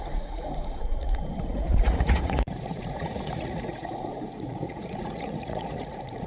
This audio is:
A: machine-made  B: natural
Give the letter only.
A